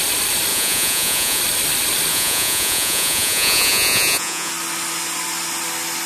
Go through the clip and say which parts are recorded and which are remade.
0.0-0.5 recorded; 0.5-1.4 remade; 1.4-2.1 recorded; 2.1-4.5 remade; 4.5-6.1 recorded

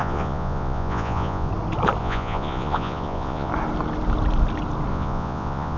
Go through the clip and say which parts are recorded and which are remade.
0.0-1.5 remade; 1.5-2.0 recorded; 2.0-3.5 remade; 3.5-4.9 recorded; 4.9-5.8 remade

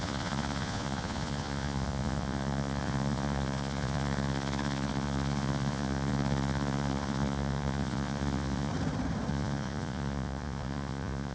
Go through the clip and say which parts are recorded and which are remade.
0.0-8.7 remade; 8.7-9.3 recorded; 9.3-11.3 remade

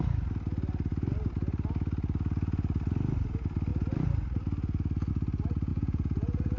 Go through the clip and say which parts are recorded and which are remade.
0.0-5.7 recorded; 5.7-6.6 remade

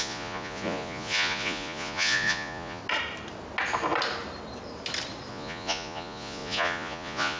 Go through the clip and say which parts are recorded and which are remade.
0.0-2.8 remade; 2.8-5.3 recorded; 5.3-7.4 remade